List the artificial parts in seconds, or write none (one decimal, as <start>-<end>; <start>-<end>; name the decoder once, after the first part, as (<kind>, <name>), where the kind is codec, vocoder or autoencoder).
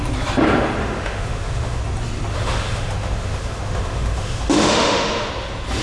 0.8-1.8 (autoencoder, DAC-VAE); 2.3-5.3